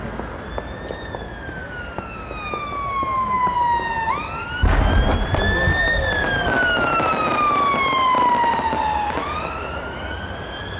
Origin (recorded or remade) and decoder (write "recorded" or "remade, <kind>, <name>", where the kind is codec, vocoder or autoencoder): recorded